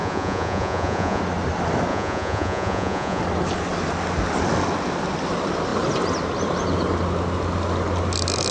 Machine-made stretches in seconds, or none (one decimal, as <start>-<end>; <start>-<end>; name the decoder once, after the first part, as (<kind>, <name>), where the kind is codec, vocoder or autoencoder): 0.0-1.2 (vocoder, Vocos); 1.9-3.2